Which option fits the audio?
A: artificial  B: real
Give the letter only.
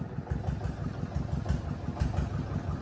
B